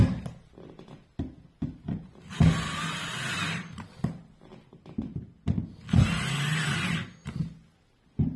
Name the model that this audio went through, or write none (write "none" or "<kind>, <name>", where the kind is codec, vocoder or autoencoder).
none